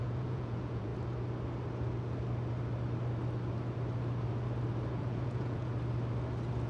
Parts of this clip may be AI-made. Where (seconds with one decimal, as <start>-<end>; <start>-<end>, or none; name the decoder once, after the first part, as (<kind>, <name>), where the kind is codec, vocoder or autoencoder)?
0.0-0.9 (vocoder, Vocos); 4.9-5.7